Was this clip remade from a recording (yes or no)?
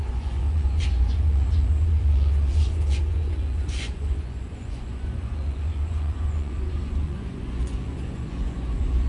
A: yes